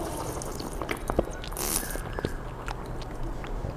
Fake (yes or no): no